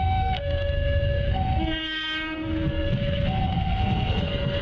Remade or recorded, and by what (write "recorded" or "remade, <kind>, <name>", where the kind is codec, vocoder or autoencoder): remade, codec, SNAC